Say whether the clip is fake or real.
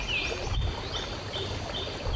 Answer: real